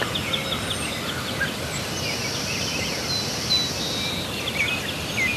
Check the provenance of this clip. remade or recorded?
recorded